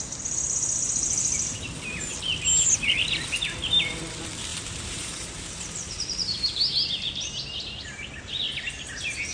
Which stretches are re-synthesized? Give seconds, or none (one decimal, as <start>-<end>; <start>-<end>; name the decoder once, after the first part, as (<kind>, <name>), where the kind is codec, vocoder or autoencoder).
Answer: 4.5-7.2 (vocoder, BigVGAN v2)